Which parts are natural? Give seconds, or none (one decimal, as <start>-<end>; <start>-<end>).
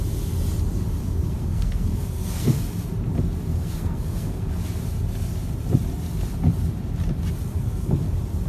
0.0-1.0; 2.6-3.5; 4.5-7.5; 8.0-8.5